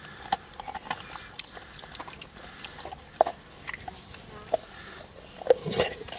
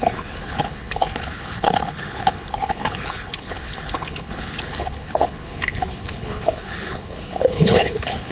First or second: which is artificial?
second